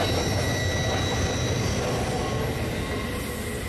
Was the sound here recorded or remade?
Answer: recorded